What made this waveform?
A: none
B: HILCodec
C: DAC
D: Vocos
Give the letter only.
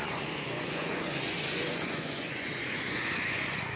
D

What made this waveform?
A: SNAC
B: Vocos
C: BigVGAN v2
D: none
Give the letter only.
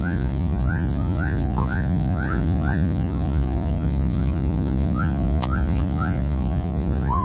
B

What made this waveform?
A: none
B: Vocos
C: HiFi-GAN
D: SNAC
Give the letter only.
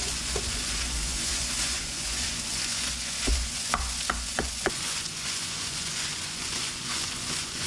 B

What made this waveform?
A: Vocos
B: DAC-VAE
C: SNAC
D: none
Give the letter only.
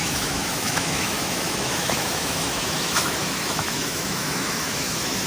B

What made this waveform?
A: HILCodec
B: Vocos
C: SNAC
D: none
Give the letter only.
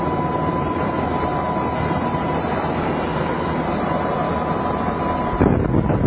D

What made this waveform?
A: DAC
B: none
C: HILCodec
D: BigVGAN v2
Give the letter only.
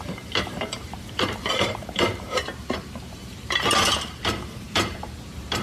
D